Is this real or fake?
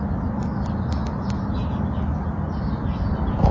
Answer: real